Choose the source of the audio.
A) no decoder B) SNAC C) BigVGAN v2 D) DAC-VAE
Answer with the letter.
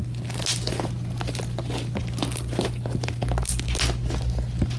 A